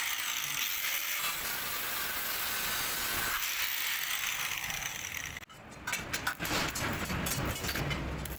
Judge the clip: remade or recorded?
recorded